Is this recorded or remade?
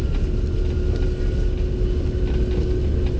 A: recorded